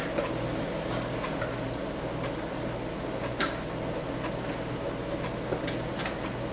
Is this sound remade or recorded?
recorded